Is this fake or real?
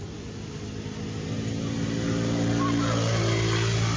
real